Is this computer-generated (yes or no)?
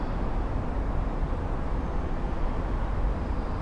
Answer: no